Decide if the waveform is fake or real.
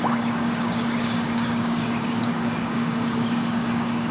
fake